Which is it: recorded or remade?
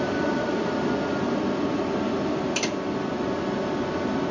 recorded